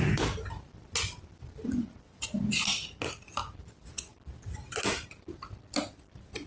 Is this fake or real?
real